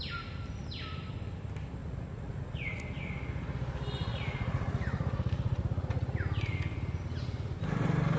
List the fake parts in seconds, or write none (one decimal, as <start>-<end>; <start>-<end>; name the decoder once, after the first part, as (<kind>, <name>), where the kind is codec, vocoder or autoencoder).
1.8-2.8 (vocoder, Vocos); 4.0-6.2